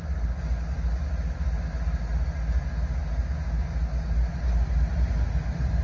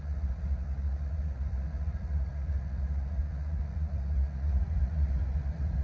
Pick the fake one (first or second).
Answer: second